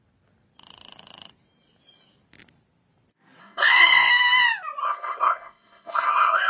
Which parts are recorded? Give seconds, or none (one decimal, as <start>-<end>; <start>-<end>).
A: 0.0-3.4; 4.1-4.8